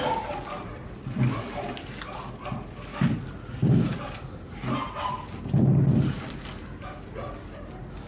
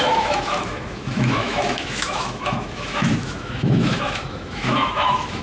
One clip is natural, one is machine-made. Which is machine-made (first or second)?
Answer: second